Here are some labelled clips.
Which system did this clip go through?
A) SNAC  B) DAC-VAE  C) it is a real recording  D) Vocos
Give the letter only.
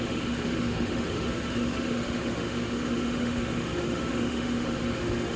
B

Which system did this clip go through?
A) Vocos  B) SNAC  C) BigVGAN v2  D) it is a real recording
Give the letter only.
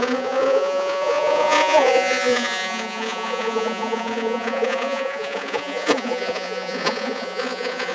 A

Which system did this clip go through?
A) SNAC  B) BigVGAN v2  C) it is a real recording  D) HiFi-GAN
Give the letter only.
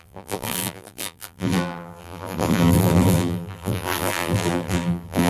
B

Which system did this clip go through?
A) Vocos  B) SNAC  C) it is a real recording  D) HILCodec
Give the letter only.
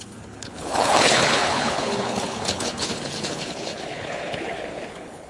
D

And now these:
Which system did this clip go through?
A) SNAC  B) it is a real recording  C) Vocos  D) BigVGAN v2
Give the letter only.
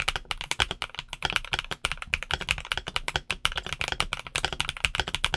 B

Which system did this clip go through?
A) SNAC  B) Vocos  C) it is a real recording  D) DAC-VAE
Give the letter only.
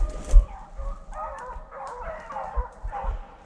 C